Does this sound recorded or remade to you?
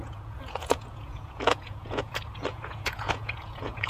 remade